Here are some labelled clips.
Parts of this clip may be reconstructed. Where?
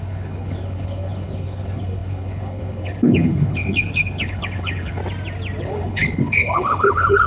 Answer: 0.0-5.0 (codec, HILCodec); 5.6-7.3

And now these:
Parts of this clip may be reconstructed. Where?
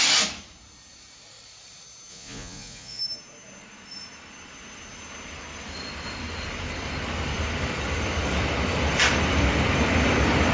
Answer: 2.1-3.0 (vocoder, Vocos)